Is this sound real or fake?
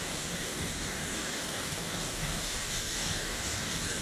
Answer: fake